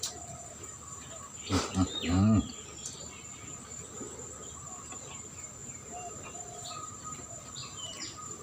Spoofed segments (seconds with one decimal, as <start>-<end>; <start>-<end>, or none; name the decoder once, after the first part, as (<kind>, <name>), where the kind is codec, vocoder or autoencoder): 5.6-8.4 (vocoder, BigVGAN v2)